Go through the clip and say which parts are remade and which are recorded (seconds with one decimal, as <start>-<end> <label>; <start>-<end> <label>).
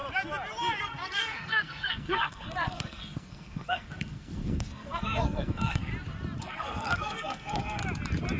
0.0-0.8 recorded; 0.8-5.9 remade; 5.9-6.4 recorded; 6.4-7.8 remade; 7.8-8.4 recorded